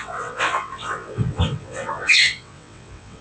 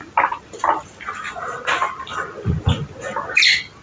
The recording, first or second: second